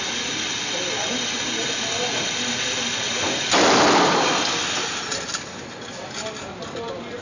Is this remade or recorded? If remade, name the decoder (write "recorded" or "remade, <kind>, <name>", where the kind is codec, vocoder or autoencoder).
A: recorded